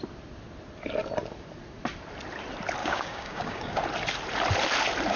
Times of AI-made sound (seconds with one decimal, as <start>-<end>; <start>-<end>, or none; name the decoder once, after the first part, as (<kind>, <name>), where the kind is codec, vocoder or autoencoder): 2.8-3.8 (codec, DAC)